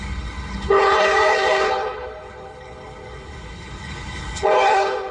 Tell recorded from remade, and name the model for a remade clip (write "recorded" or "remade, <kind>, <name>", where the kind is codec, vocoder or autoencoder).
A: remade, codec, HILCodec